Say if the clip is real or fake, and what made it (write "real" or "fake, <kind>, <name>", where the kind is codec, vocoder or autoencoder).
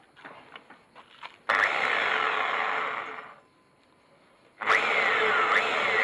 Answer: real